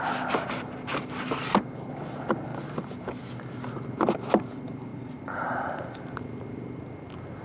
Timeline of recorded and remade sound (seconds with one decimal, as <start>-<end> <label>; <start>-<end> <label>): 0.0-4.9 recorded; 4.9-6.0 remade; 6.0-7.4 recorded